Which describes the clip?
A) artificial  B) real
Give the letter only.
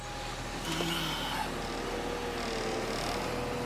B